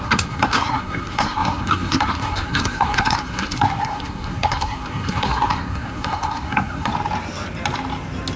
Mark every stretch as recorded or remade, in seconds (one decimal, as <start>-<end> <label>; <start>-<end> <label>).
0.0-6.9 remade; 6.9-8.4 recorded